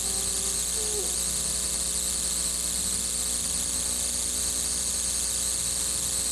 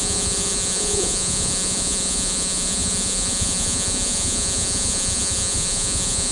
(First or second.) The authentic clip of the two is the first